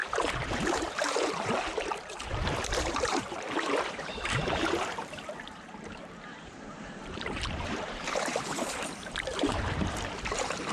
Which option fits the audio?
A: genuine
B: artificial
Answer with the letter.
B